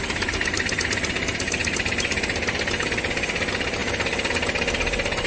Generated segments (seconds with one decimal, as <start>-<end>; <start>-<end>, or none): none